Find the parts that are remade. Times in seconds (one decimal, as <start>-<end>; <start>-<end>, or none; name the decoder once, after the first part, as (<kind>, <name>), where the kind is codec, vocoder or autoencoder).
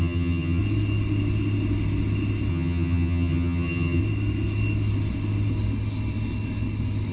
0.0-0.6 (vocoder, HiFi-GAN); 2.5-4.0